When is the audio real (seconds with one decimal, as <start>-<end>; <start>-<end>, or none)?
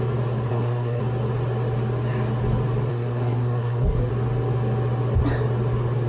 0.0-0.5; 1.0-2.9; 4.1-6.1